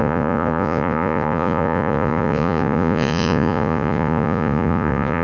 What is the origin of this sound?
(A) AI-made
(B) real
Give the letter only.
A